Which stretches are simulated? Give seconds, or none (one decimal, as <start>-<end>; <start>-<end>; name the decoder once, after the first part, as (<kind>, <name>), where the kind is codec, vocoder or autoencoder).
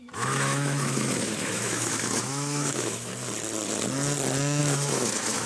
0.0-3.1 (autoencoder, DAC-VAE); 4.6-5.5